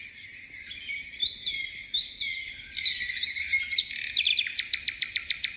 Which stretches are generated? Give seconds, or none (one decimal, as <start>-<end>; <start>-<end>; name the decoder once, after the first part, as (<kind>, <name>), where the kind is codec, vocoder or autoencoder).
none